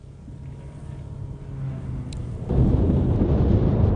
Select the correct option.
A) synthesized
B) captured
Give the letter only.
B